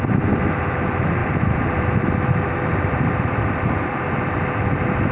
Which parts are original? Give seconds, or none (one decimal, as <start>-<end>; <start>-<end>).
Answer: 0.0-1.2; 3.9-5.1